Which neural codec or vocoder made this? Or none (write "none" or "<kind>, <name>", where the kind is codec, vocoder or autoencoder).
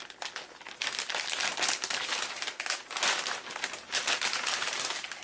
none